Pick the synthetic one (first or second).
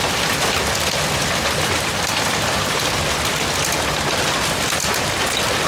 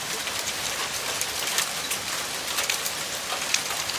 second